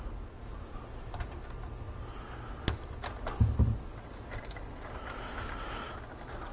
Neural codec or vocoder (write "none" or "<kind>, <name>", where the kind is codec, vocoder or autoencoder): none